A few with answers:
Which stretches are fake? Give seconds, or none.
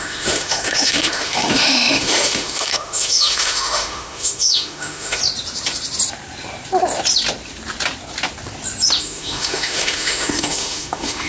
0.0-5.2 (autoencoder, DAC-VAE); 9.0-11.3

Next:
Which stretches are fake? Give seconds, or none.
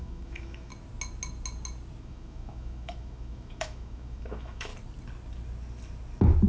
0.0-0.7 (autoencoder, DAC-VAE); 2.0-4.7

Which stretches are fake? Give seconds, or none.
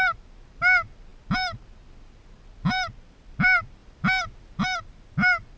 none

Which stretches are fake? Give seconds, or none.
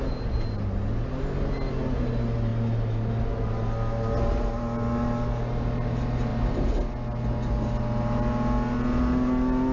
none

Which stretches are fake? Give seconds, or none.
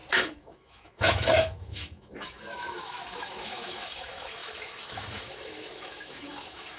0.0-6.8 (autoencoder, DAC-VAE)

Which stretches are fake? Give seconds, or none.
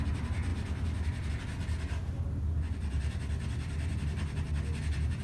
none